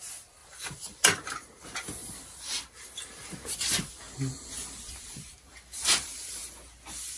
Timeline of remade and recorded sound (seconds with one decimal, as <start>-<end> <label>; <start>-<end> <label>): 0.0-0.4 recorded; 0.4-1.6 remade; 1.6-2.0 recorded; 2.0-6.1 remade; 6.1-7.2 recorded